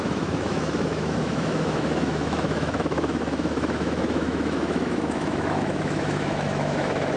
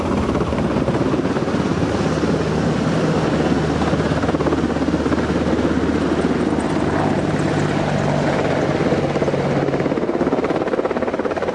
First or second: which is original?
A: second